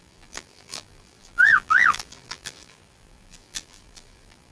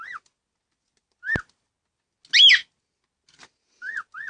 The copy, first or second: first